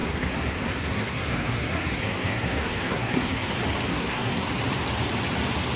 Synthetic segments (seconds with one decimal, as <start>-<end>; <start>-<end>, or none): 0.0-3.5; 3.9-4.5

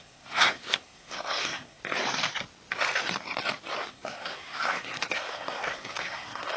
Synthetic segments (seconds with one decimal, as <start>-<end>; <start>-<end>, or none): 0.0-1.8; 3.9-6.6

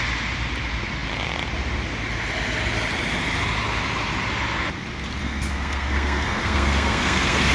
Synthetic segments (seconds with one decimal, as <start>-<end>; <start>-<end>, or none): 5.2-7.5

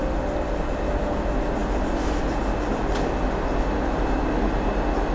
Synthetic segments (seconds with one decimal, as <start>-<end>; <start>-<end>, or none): none

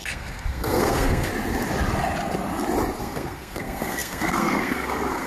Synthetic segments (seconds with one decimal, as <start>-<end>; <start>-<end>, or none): 0.0-1.3; 3.0-5.3